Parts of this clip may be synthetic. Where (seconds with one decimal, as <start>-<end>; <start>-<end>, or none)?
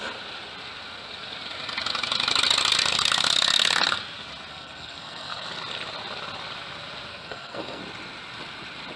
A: 4.5-5.5; 7.1-7.8